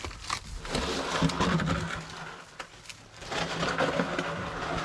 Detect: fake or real real